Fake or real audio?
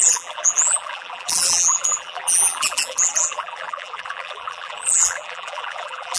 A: fake